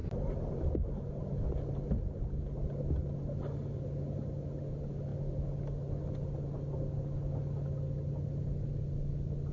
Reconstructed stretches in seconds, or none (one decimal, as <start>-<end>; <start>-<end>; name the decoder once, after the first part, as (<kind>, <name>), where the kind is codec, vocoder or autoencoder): none

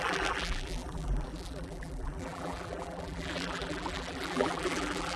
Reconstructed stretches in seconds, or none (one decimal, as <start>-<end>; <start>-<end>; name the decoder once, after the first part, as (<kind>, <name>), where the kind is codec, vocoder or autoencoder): 0.0-5.2 (vocoder, BigVGAN v2)

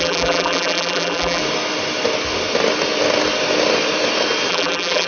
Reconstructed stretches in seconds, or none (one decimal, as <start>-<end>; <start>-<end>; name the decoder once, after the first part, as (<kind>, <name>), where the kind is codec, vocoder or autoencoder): 0.0-1.4 (vocoder, BigVGAN v2); 4.5-5.1

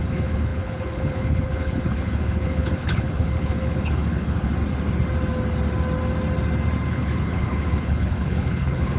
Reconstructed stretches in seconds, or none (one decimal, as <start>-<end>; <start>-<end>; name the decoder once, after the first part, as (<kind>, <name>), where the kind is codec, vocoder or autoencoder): 0.0-4.5 (codec, HILCodec); 6.9-9.0

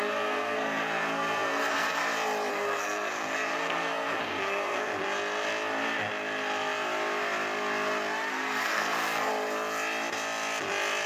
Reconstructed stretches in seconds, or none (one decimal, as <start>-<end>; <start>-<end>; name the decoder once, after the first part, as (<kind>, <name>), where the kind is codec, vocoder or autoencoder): 0.0-2.0 (codec, SNAC); 2.5-4.9; 8.3-9.3

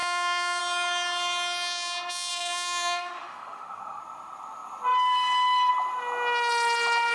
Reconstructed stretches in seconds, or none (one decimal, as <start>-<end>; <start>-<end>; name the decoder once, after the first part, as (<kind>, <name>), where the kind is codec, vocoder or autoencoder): 0.0-0.6 (autoencoder, DAC-VAE); 2.3-4.0

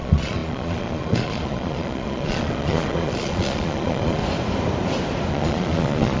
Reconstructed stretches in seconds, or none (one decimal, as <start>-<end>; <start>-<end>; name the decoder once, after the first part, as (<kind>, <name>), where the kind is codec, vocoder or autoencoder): 0.0-4.2 (vocoder, Vocos); 5.3-6.2

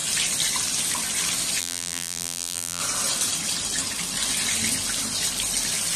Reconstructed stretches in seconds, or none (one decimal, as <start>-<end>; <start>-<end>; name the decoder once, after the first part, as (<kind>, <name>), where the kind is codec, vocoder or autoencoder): 1.6-2.8 (vocoder, BigVGAN v2)